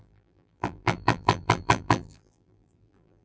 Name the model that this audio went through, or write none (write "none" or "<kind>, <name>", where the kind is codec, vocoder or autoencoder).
vocoder, BigVGAN v2